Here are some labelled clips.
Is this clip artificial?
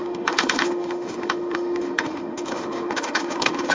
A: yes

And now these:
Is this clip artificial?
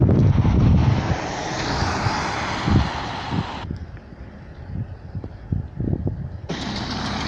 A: no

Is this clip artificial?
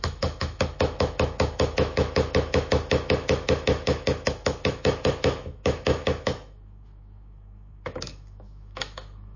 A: yes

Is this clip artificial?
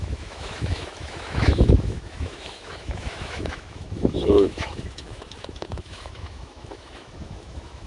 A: yes